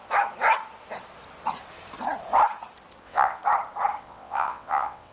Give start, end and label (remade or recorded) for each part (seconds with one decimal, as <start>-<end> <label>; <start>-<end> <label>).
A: 0.0-3.0 recorded; 3.0-3.4 remade; 3.4-4.0 recorded; 4.0-5.1 remade

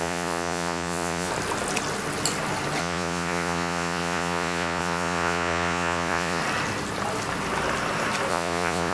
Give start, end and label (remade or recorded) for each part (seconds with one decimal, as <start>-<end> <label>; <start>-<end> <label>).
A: 0.0-1.3 remade; 1.3-2.8 recorded; 2.8-6.4 remade; 6.4-8.3 recorded; 8.3-8.9 remade

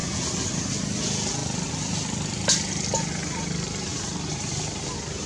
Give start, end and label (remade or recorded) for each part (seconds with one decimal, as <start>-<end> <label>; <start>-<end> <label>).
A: 0.0-5.3 recorded

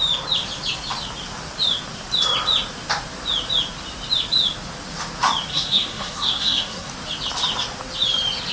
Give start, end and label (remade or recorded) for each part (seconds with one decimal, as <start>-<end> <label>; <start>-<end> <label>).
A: 0.0-5.5 recorded; 5.5-6.9 remade; 6.9-8.5 recorded